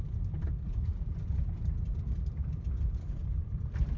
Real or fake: real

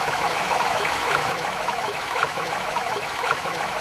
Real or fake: fake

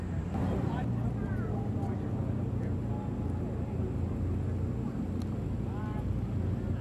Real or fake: real